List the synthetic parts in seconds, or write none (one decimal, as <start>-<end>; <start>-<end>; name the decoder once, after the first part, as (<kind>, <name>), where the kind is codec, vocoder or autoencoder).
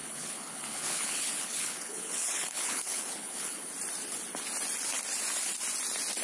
0.0-3.7 (codec, HILCodec)